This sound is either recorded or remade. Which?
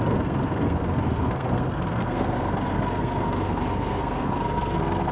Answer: remade